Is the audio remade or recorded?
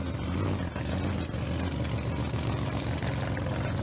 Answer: recorded